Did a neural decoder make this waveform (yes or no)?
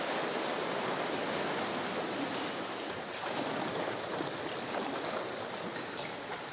no